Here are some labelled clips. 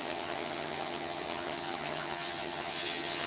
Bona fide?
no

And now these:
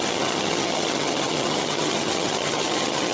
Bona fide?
no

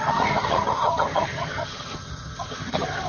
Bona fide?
no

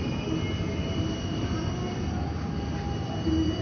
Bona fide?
yes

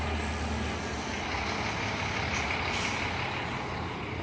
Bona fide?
yes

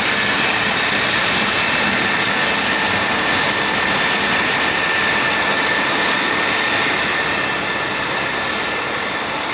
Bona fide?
yes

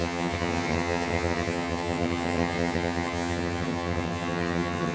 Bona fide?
no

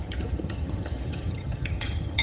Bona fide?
no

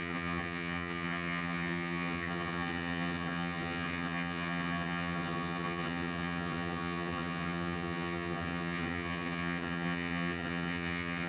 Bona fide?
no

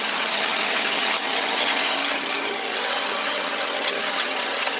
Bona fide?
no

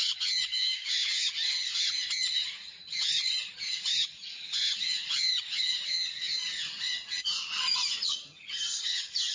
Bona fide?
no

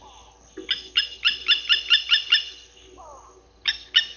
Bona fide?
yes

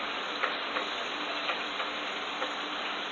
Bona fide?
yes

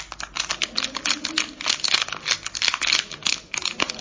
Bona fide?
yes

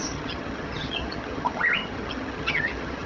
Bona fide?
no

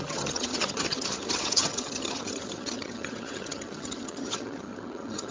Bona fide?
no